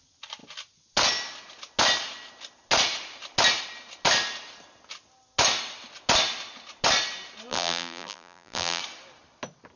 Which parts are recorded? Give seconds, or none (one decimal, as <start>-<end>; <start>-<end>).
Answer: 0.0-7.5; 8.8-9.8